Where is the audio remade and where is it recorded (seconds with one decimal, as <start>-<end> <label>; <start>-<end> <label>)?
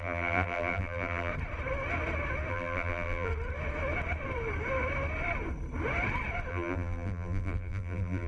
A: 0.0-1.3 remade; 1.3-2.5 recorded; 2.5-3.3 remade; 3.3-6.5 recorded; 6.5-8.3 remade